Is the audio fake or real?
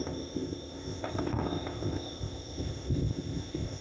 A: fake